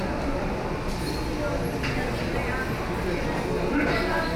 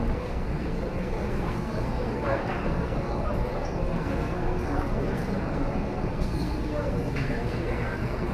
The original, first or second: first